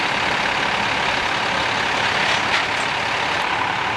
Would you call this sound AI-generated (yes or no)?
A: no